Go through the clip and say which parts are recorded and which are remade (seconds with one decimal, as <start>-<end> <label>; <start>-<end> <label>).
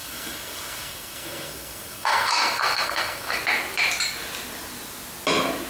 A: 0.0-3.4 remade; 3.4-5.7 recorded